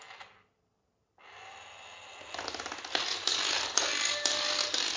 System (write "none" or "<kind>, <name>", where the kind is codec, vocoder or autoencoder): none